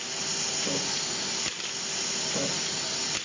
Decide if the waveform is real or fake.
real